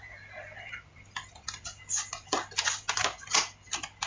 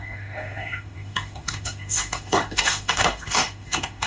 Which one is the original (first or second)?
first